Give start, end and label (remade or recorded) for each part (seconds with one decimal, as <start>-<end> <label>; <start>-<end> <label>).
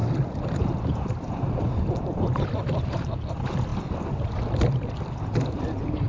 0.0-3.7 remade; 3.7-6.1 recorded